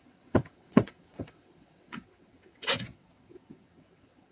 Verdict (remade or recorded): remade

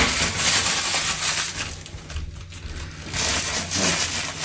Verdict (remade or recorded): recorded